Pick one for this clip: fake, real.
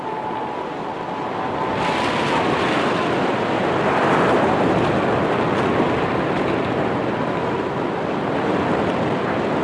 real